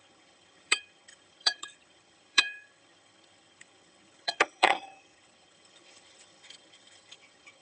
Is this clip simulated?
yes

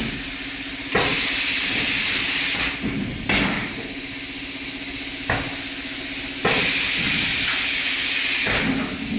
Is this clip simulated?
no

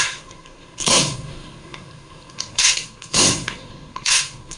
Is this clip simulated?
yes